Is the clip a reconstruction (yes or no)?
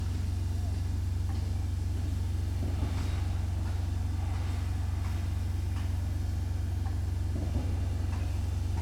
no